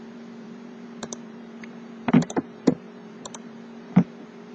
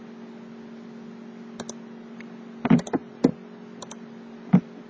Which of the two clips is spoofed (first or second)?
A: first